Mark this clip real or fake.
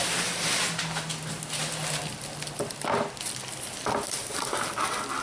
real